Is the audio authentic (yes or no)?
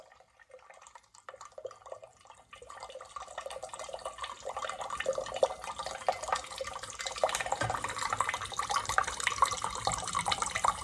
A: yes